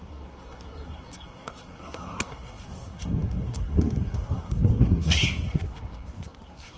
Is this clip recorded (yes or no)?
no